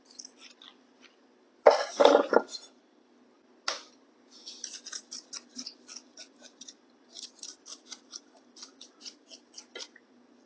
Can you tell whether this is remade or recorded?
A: recorded